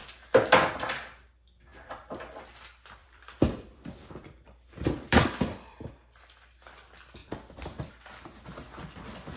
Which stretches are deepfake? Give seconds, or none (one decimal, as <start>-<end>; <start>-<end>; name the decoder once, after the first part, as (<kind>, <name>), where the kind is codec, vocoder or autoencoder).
1.7-2.4 (vocoder, BigVGAN v2); 3.0-5.9; 7.2-7.9